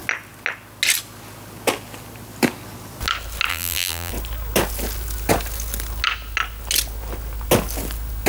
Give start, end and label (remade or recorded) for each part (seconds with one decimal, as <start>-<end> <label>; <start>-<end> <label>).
0.0-3.5 recorded; 3.5-4.1 remade; 4.1-8.3 recorded